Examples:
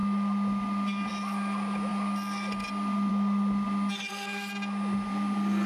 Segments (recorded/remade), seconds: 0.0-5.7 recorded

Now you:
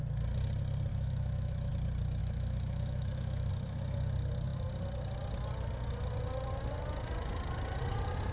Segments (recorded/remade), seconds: 0.0-0.9 recorded; 0.9-1.7 remade; 1.7-2.2 recorded; 2.2-3.5 remade; 3.5-8.3 recorded

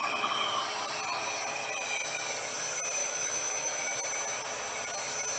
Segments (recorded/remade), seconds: 0.0-3.0 recorded; 3.0-4.0 remade; 4.0-5.4 recorded

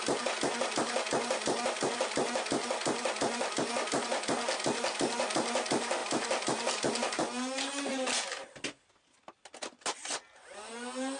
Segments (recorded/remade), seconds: 0.0-11.2 recorded

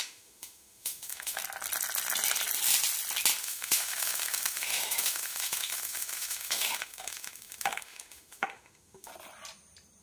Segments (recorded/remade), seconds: 0.0-1.4 remade; 1.4-3.4 recorded; 3.4-9.1 remade; 9.1-10.0 recorded